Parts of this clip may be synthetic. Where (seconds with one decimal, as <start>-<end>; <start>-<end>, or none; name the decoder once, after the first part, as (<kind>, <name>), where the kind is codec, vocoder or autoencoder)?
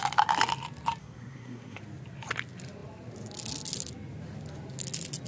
1.0-1.8 (codec, SNAC)